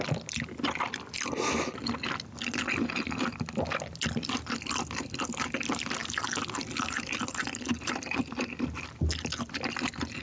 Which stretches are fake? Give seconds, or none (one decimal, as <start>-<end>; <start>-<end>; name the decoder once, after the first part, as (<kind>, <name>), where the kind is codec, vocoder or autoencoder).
none